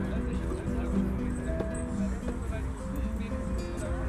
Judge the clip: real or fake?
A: real